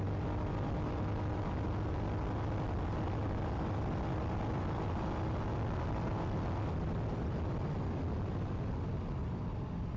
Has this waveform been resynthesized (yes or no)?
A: no